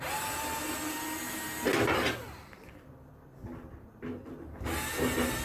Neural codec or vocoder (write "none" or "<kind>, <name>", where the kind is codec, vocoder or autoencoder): none